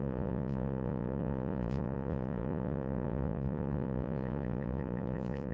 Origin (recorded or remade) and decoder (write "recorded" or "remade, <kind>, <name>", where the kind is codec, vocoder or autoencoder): remade, vocoder, Vocos